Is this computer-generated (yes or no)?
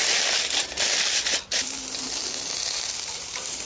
yes